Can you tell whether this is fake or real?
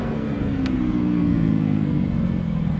fake